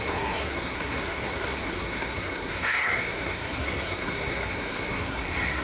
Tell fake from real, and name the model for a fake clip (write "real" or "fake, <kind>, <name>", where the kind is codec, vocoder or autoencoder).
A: fake, codec, SNAC